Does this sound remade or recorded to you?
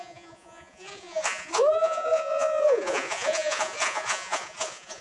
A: remade